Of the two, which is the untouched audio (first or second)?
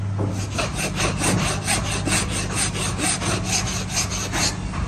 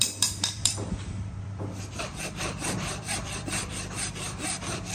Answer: first